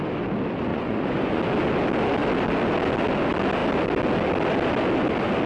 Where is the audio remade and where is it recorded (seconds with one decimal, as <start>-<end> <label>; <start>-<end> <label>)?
0.0-0.7 recorded; 0.7-1.4 remade; 1.4-5.5 recorded

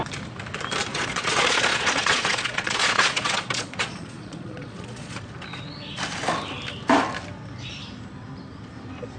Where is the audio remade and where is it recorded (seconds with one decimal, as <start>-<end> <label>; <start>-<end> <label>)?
0.0-0.9 recorded; 0.9-5.2 remade; 5.2-9.2 recorded

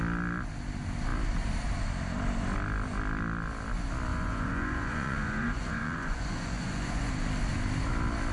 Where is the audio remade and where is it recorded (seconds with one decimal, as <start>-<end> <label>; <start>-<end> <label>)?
0.0-4.1 recorded; 4.1-7.1 remade; 7.1-8.3 recorded

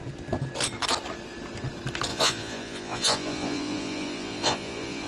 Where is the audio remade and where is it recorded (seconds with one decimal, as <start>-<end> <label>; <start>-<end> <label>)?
0.0-2.1 recorded; 2.1-5.1 remade